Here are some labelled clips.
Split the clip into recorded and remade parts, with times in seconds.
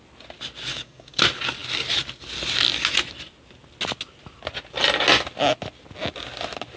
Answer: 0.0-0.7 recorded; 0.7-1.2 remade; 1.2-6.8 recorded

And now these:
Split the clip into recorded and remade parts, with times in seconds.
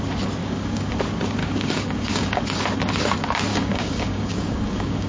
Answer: 0.0-0.4 recorded; 0.4-0.9 remade; 0.9-1.4 recorded; 1.4-2.4 remade; 2.4-3.5 recorded; 3.5-5.1 remade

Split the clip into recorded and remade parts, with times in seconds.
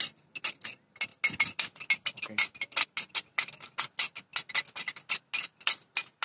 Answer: 0.0-6.2 recorded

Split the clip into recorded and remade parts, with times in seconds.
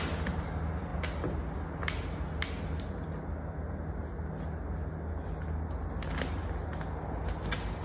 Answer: 0.0-7.8 recorded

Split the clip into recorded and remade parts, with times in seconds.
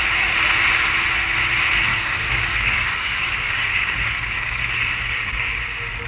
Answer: 0.0-1.9 recorded; 1.9-5.6 remade; 5.6-6.1 recorded